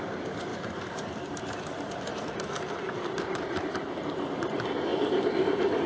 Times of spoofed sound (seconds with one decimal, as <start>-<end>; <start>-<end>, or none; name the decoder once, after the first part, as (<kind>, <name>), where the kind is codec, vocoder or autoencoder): 0.5-4.0 (vocoder, BigVGAN v2); 4.9-5.9